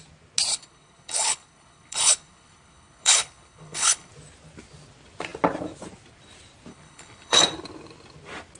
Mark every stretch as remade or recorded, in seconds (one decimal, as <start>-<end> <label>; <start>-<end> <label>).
0.0-0.5 recorded; 0.5-4.1 remade; 4.1-6.7 recorded; 6.7-7.4 remade; 7.4-8.6 recorded